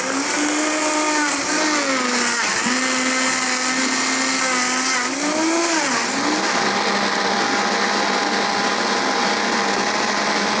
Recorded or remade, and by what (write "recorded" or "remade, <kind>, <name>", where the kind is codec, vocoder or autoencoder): recorded